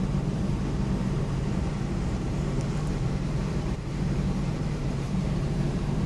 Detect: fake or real fake